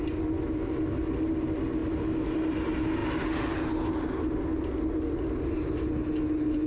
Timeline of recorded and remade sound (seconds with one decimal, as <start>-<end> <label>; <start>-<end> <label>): 0.0-6.7 recorded